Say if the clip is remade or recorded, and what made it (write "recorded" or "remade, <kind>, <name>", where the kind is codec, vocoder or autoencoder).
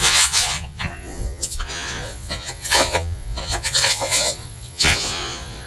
remade, vocoder, Vocos